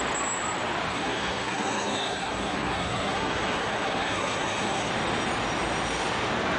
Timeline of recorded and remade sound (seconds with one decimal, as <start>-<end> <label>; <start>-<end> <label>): 0.0-0.9 recorded; 0.9-4.9 remade; 4.9-6.6 recorded